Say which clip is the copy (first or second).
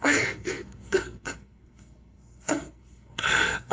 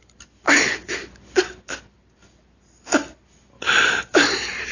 first